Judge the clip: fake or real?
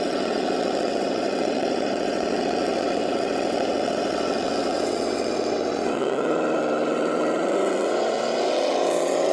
fake